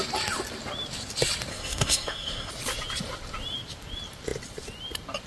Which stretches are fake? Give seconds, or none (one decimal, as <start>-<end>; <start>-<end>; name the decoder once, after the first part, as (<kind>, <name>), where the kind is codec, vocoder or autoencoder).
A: 1.5-2.5 (codec, SNAC)